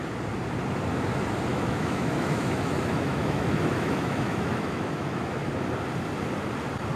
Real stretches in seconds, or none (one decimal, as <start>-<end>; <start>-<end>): 0.0-1.5; 5.5-7.0